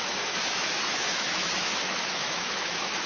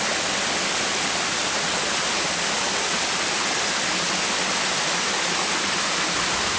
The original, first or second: second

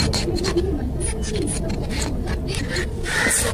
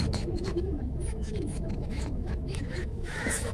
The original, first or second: first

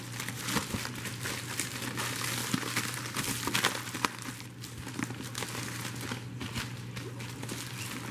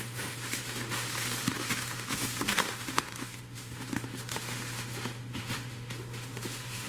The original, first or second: first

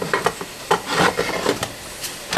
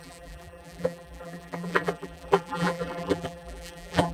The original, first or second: first